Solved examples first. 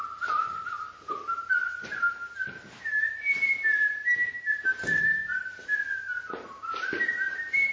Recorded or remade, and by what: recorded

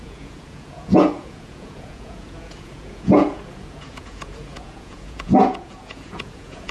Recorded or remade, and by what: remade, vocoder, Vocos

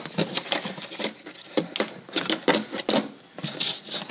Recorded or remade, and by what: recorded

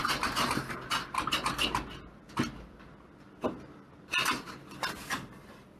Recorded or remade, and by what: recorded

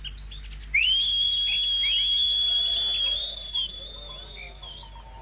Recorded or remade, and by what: recorded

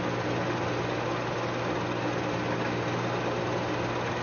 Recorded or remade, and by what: recorded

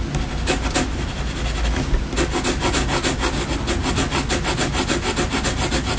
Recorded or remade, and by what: recorded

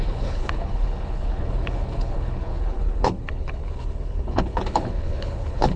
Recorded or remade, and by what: remade, codec, HILCodec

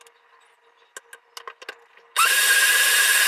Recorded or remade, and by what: recorded